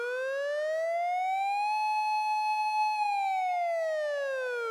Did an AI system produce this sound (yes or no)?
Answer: no